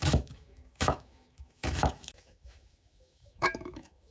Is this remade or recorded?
remade